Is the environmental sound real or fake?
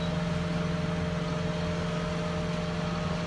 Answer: real